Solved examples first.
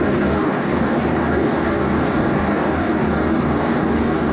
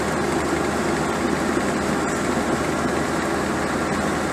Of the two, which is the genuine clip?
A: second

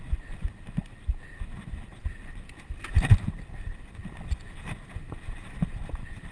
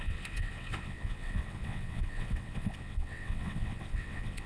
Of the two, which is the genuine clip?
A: first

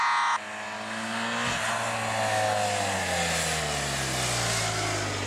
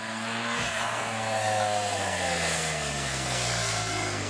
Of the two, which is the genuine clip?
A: first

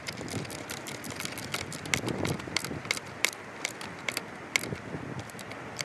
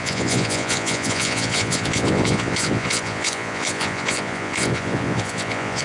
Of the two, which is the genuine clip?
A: first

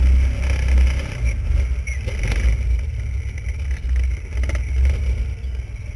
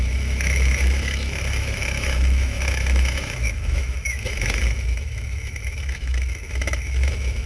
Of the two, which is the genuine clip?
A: first